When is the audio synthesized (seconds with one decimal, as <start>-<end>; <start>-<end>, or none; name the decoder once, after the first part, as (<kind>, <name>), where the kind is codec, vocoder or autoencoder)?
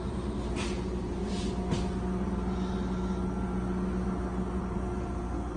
0.0-1.2 (vocoder, BigVGAN v2); 4.6-5.6